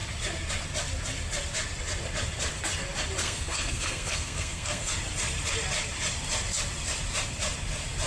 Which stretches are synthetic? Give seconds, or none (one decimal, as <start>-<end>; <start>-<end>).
3.2-4.9